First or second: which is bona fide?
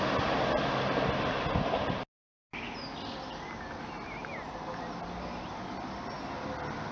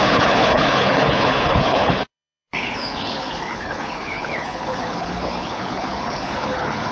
first